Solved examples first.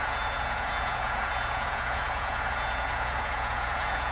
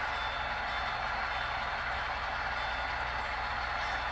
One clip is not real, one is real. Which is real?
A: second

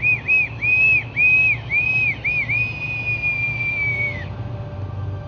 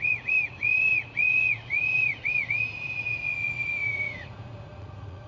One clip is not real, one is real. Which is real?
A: first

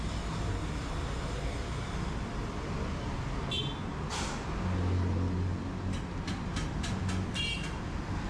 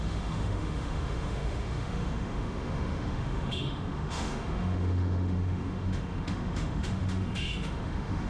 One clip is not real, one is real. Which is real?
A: first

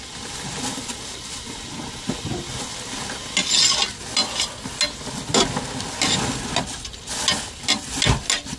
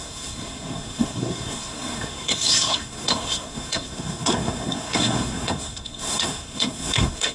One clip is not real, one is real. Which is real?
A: first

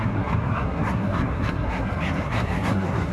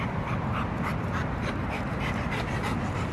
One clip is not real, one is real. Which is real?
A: second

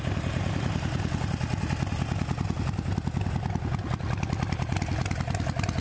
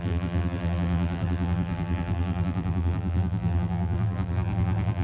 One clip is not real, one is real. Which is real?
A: first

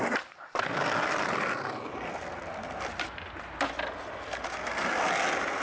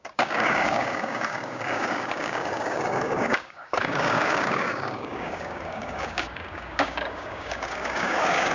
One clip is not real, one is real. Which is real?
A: first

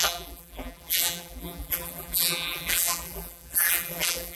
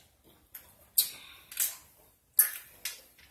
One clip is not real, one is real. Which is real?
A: second